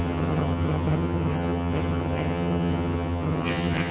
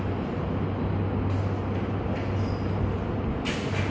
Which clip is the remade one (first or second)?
first